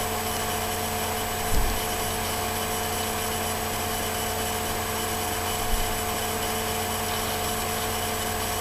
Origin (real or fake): real